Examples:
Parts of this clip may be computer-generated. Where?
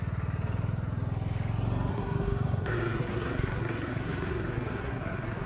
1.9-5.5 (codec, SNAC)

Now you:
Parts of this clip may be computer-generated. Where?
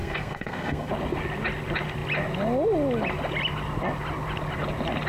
0.0-0.9 (codec, SNAC)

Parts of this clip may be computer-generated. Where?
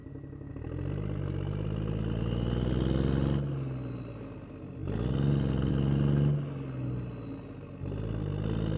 none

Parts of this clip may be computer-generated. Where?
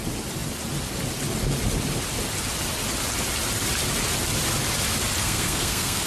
5.2-6.1 (codec, SNAC)